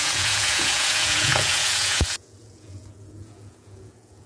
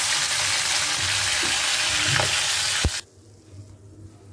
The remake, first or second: first